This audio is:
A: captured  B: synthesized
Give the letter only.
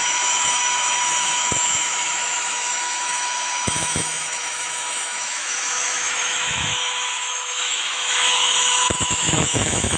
B